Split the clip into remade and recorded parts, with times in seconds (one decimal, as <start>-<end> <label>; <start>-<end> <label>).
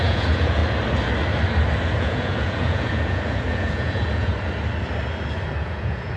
0.0-0.6 remade; 0.6-2.0 recorded; 2.0-4.3 remade; 4.3-5.6 recorded; 5.6-6.2 remade